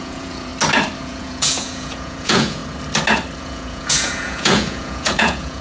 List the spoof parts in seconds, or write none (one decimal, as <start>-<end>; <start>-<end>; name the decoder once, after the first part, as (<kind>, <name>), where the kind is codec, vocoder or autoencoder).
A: 0.0-0.5 (vocoder, Vocos); 1.0-2.6; 3.4-5.6